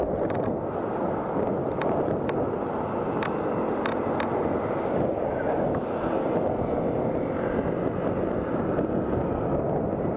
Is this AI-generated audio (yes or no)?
no